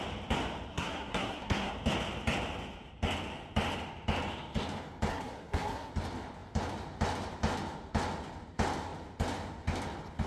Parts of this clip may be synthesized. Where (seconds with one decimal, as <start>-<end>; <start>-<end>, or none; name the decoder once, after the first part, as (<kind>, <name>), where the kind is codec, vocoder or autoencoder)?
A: 0.7-1.7 (codec, SNAC); 5.1-5.9